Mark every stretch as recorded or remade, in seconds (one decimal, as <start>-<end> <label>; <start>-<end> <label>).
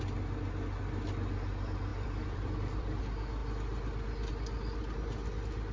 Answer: 0.0-1.9 recorded; 1.9-3.0 remade; 3.0-5.7 recorded